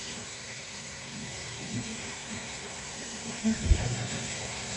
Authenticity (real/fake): fake